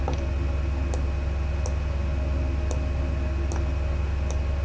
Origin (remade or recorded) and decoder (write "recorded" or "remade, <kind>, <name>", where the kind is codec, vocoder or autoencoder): recorded